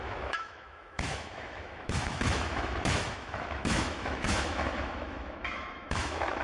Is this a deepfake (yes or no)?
yes